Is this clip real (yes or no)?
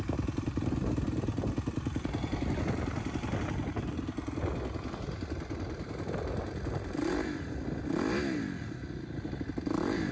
yes